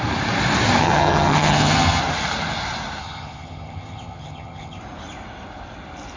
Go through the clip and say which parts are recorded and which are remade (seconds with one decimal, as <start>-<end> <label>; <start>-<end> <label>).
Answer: 0.0-0.8 recorded; 0.8-2.0 remade; 2.0-3.0 recorded; 3.0-4.8 remade; 4.8-6.2 recorded